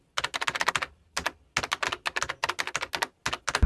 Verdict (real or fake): real